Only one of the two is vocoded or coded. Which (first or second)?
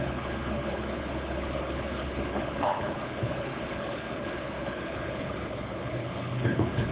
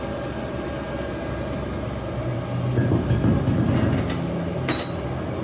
first